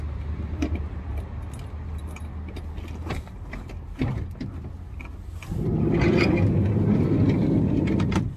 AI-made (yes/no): no